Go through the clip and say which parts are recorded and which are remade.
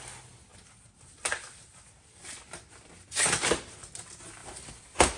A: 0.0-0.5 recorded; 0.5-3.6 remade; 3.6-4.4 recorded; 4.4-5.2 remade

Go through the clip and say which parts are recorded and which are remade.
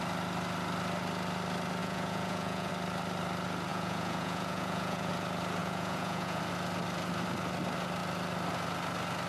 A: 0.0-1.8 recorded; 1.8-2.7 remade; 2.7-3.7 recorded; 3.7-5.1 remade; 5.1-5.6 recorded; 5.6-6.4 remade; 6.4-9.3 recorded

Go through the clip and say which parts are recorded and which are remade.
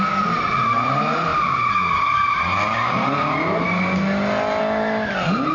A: 0.0-5.5 recorded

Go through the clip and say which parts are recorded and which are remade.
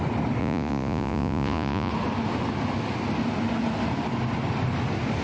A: 0.0-0.4 recorded; 0.4-1.9 remade; 1.9-5.2 recorded